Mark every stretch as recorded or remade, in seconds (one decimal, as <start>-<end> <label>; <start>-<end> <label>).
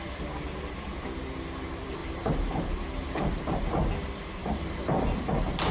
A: 0.0-2.0 recorded; 2.0-3.7 remade; 3.7-4.4 recorded; 4.4-5.7 remade